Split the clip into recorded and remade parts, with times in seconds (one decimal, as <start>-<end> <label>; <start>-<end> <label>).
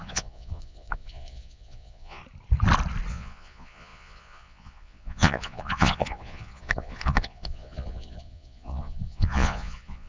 0.0-2.2 remade; 2.2-3.1 recorded; 3.1-10.1 remade